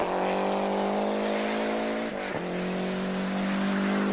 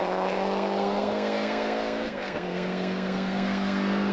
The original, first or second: first